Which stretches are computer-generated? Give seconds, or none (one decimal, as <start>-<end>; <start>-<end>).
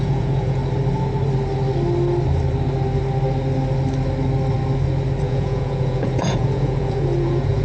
0.0-0.6; 5.2-7.6